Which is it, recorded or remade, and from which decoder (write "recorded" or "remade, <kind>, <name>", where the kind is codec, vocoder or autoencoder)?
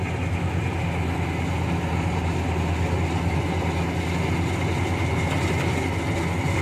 recorded